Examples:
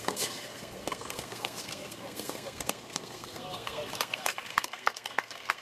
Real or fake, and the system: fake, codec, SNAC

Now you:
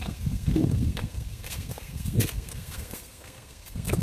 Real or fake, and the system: fake, codec, SNAC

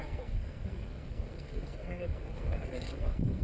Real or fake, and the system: fake, codec, SNAC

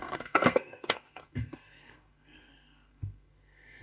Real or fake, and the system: fake, codec, SNAC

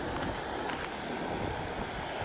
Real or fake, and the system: real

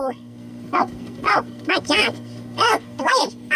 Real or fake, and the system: fake, codec, SNAC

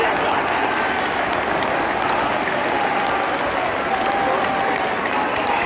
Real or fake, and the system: real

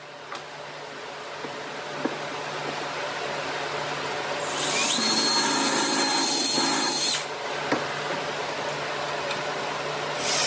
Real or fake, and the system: real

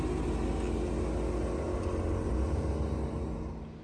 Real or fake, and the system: real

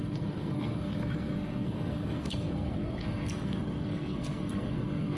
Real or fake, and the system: fake, codec, SNAC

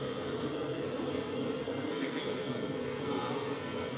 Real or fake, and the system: fake, codec, SNAC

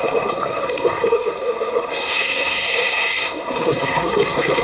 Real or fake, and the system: fake, codec, SNAC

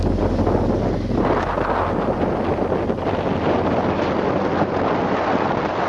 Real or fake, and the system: real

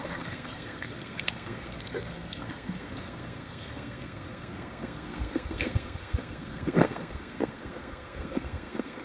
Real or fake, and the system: fake, codec, SNAC